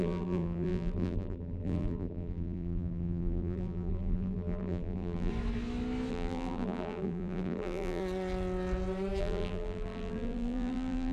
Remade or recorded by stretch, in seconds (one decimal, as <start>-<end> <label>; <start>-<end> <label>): 0.0-5.3 remade; 5.3-6.1 recorded; 6.1-8.0 remade; 8.0-9.2 recorded; 9.2-11.1 remade